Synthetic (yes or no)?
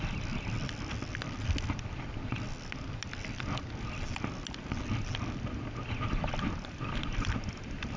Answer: no